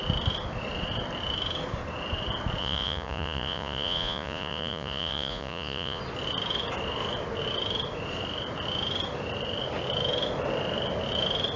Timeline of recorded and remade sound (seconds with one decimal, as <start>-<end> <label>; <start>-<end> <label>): 0.0-2.6 recorded; 2.6-6.0 remade; 6.0-11.6 recorded